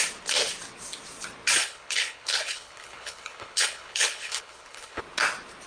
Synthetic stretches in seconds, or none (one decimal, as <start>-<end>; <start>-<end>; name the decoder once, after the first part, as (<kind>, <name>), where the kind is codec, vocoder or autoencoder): 1.6-5.0 (codec, HILCodec)